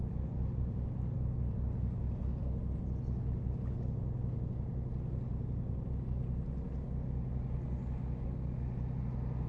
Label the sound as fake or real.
real